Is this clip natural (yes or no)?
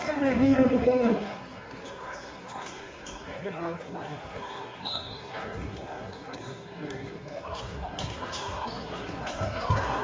no